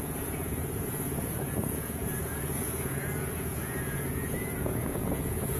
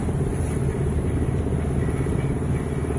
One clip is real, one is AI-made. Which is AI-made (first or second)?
first